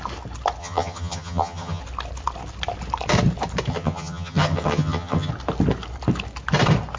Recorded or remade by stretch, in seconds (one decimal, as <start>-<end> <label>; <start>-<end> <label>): 0.0-0.6 recorded; 0.6-1.8 remade; 1.8-3.7 recorded; 3.7-5.3 remade; 5.3-7.0 recorded